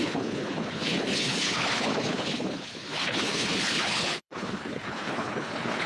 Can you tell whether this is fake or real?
fake